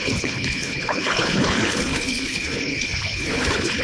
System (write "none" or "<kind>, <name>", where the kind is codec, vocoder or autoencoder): codec, HILCodec